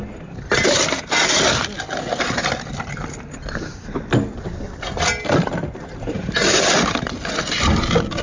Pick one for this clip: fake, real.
real